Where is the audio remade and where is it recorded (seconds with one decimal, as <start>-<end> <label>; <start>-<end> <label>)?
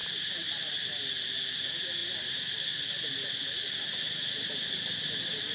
0.0-5.5 recorded